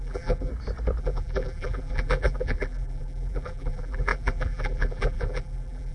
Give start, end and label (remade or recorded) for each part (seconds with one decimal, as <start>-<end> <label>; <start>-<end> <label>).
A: 0.0-0.5 remade; 0.5-1.0 recorded; 1.0-5.9 remade